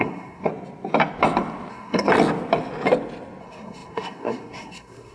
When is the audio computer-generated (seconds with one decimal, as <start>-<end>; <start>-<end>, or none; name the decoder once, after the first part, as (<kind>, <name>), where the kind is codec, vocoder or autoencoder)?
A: 0.0-0.5 (codec, SNAC); 1.7-2.1; 3.4-5.1